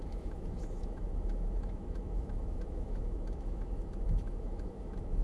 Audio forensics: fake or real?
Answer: fake